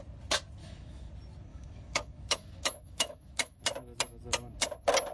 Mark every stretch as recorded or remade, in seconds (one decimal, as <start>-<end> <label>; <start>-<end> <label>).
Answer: 0.0-0.6 recorded; 0.6-1.1 remade; 1.1-1.5 recorded; 1.5-3.6 remade; 3.6-5.1 recorded